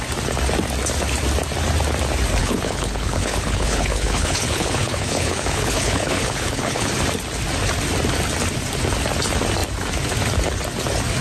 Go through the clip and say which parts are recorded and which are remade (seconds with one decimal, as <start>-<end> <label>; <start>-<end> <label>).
0.0-2.4 recorded; 2.4-6.9 remade; 6.9-11.2 recorded